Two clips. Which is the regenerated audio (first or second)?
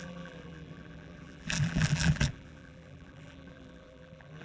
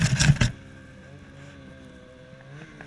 first